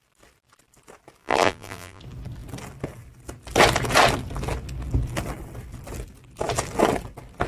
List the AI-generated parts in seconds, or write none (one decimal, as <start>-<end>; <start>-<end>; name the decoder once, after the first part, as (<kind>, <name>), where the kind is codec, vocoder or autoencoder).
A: 1.2-2.0 (vocoder, BigVGAN v2)